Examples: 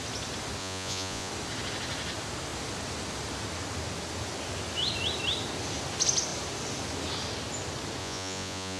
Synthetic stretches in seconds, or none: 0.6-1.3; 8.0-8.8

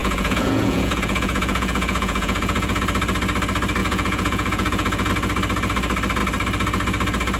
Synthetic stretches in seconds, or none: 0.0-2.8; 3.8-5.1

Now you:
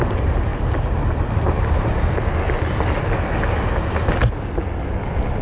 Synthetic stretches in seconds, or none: none